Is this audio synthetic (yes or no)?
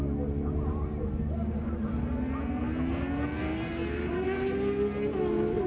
no